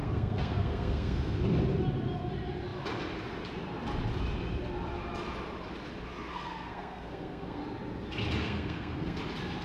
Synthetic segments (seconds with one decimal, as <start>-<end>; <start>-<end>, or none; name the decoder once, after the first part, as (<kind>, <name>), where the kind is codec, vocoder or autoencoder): 0.0-1.4 (codec, SNAC); 6.3-7.6; 8.4-9.2